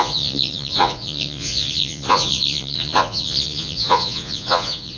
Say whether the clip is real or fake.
fake